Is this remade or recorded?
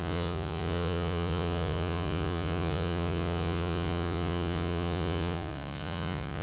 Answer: remade